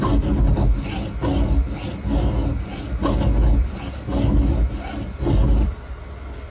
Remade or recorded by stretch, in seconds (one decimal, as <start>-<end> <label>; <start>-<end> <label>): 0.0-6.5 recorded